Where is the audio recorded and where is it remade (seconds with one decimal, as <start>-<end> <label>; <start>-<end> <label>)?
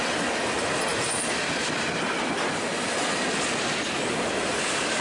0.0-5.0 recorded